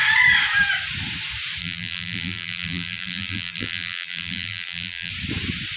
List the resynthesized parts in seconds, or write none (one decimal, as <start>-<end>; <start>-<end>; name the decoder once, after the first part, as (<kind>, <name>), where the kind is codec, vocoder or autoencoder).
1.6-5.1 (vocoder, BigVGAN v2)